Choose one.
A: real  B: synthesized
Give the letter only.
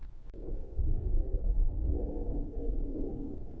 B